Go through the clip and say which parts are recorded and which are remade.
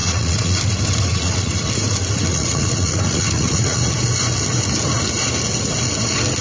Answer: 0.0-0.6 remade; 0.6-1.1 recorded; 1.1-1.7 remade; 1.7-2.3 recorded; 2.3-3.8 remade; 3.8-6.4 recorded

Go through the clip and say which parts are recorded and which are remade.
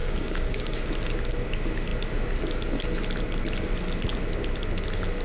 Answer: 0.0-0.8 remade; 0.8-5.2 recorded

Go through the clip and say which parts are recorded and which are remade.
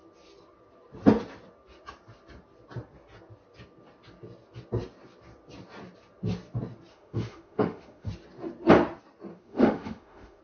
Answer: 0.0-6.9 recorded; 6.9-8.1 remade; 8.1-9.3 recorded; 9.3-10.4 remade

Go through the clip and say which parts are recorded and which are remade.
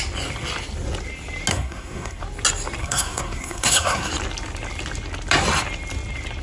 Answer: 0.0-1.5 recorded; 1.5-2.2 remade; 2.2-2.8 recorded; 2.8-4.1 remade; 4.1-6.4 recorded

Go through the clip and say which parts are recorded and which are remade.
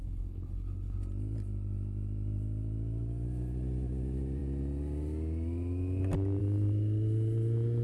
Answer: 0.0-1.0 remade; 1.0-7.8 recorded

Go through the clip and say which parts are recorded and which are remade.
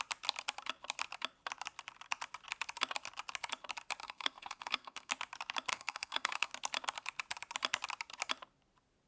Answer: 0.0-4.0 recorded; 4.0-5.1 remade; 5.1-5.7 recorded; 5.7-6.5 remade; 6.5-9.1 recorded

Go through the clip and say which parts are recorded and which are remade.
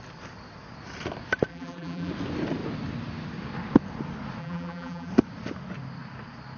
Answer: 0.0-1.5 recorded; 1.5-2.1 remade; 2.1-4.4 recorded; 4.4-5.1 remade; 5.1-6.6 recorded